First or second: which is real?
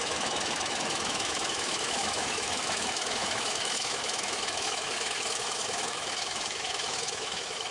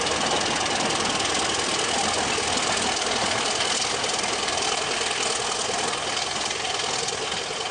second